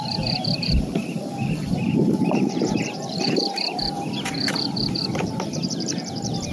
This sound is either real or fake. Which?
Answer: fake